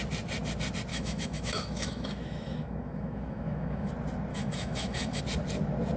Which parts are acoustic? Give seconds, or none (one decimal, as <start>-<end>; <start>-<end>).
0.0-0.9; 3.9-4.3; 5.2-6.0